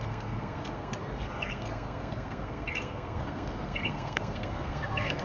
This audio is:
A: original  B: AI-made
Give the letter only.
B